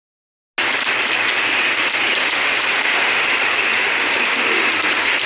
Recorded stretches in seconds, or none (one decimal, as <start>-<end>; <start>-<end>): 0.0-2.2; 3.3-3.8; 4.7-5.3